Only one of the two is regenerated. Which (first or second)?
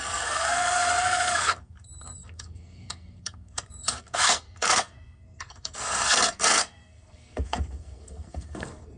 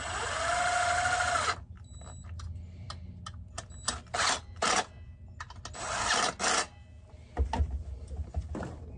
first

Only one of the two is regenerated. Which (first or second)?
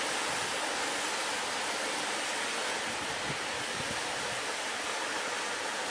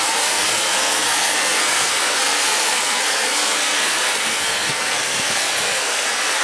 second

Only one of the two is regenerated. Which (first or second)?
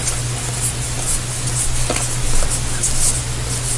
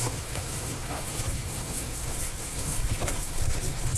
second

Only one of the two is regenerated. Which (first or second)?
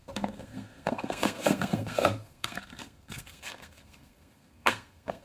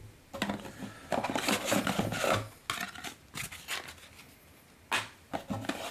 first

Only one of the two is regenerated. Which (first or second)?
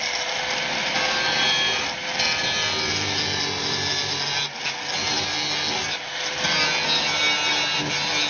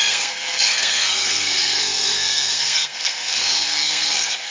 second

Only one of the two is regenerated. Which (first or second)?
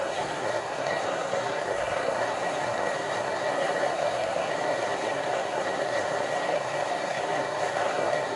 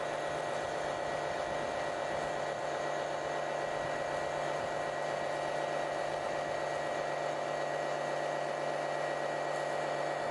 first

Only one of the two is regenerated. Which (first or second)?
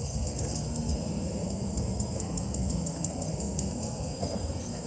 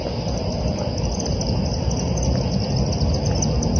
first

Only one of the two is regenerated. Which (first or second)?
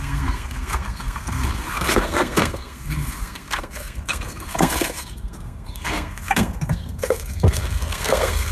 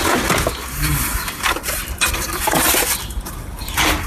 first